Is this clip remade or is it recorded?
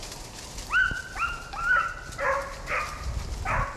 recorded